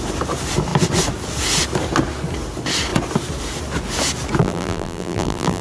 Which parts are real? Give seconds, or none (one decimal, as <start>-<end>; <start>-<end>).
0.0-4.4